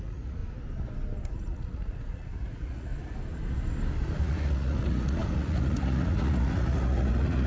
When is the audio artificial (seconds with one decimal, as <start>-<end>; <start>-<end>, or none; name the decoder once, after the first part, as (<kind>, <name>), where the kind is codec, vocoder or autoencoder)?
0.0-0.4 (vocoder, Vocos); 1.3-2.9; 4.2-7.5

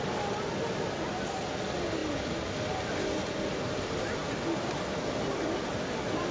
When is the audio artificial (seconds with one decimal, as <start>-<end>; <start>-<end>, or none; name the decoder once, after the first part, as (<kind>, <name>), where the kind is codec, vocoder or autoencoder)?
none

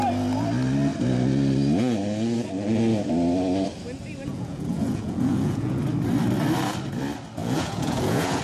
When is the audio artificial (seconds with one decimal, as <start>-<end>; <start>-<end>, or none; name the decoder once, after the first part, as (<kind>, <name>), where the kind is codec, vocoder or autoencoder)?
4.3-5.8 (vocoder, Vocos); 7.4-8.4